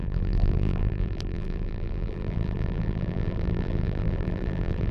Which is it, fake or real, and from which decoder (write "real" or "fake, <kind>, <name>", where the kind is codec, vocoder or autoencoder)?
fake, vocoder, BigVGAN v2